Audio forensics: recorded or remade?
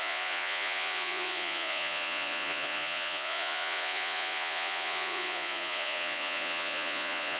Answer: remade